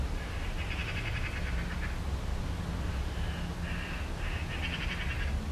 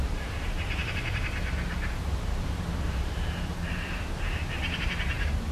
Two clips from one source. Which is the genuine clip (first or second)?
first